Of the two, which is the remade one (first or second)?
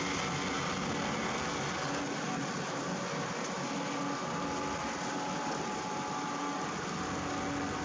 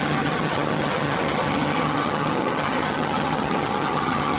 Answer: second